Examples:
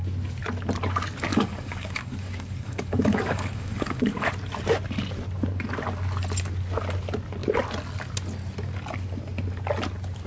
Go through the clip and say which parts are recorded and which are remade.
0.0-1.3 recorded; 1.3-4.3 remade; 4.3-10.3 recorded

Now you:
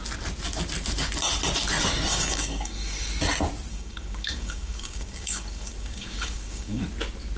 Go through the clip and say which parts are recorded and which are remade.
0.0-2.1 recorded; 2.1-3.1 remade; 3.1-3.7 recorded; 3.7-6.8 remade; 6.8-7.4 recorded

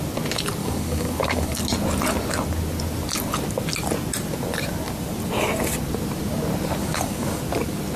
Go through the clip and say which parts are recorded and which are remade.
0.0-0.6 recorded; 0.6-1.6 remade; 1.6-6.8 recorded; 6.8-7.4 remade; 7.4-8.0 recorded

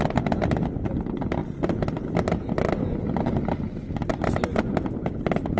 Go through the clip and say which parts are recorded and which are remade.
0.0-5.6 recorded

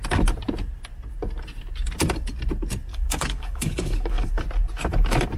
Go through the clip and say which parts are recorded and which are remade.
0.0-2.9 recorded; 2.9-4.3 remade; 4.3-5.4 recorded

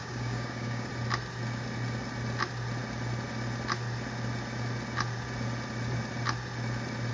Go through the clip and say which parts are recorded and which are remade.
0.0-0.9 remade; 0.9-7.1 recorded

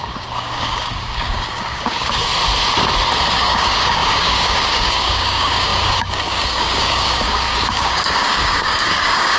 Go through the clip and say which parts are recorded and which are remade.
0.0-2.3 remade; 2.3-3.3 recorded; 3.3-9.4 remade